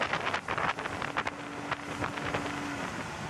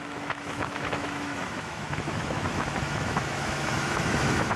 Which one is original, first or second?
first